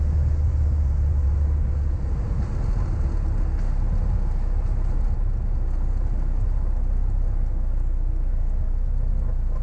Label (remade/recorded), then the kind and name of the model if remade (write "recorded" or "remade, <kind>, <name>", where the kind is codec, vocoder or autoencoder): recorded